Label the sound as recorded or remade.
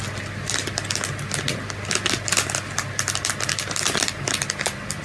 recorded